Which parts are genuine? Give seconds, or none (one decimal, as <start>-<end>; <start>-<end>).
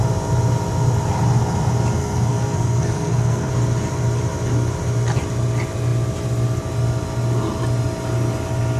0.0-2.0; 3.5-8.8